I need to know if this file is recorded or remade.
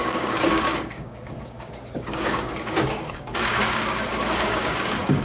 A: remade